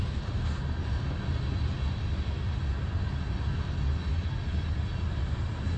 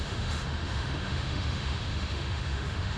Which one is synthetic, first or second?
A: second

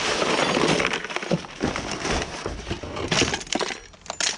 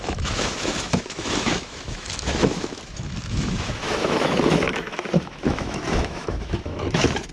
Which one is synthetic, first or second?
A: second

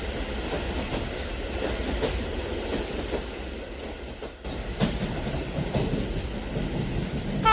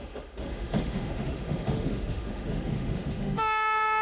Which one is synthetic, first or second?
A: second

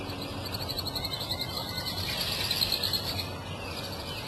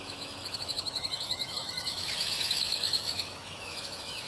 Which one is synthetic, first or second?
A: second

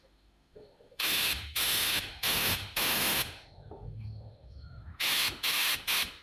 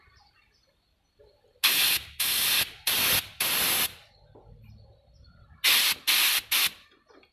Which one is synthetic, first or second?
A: first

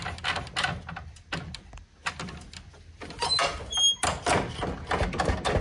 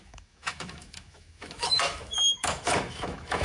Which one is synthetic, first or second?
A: second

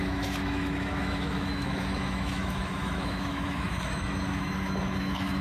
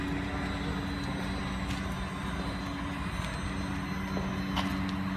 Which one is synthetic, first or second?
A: first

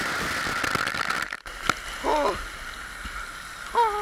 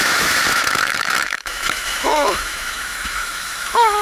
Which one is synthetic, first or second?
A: second